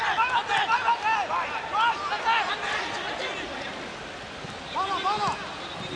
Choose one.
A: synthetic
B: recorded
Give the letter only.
B